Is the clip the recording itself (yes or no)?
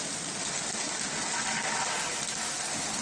yes